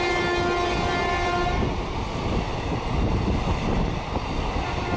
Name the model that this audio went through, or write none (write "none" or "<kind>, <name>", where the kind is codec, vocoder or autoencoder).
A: none